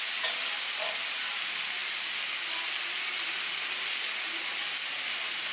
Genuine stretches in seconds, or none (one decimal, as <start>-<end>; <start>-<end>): 0.0-5.5